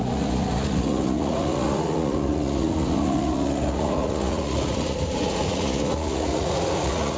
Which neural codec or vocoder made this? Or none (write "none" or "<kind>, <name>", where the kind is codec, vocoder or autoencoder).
vocoder, Vocos